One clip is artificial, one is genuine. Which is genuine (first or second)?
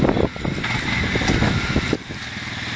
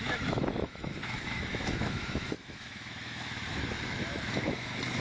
first